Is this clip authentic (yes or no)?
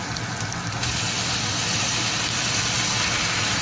yes